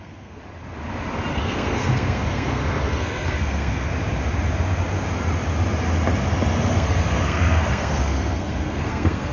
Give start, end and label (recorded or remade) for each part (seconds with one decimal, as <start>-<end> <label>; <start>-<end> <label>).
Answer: 0.0-0.4 remade; 0.4-1.3 recorded; 1.3-3.9 remade; 3.9-6.7 recorded; 6.7-9.3 remade